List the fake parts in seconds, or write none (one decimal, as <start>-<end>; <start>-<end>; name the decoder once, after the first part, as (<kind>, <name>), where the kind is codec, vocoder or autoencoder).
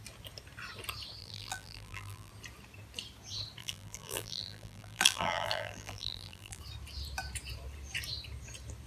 1.2-2.3 (vocoder, BigVGAN v2); 3.6-6.6